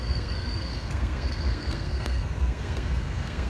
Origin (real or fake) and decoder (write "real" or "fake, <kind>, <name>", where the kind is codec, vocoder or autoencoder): fake, codec, SNAC